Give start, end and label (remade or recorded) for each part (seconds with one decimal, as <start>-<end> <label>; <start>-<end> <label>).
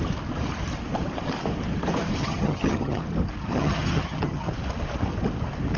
0.0-2.2 recorded; 2.2-3.0 remade; 3.0-3.4 recorded; 3.4-4.5 remade; 4.5-5.8 recorded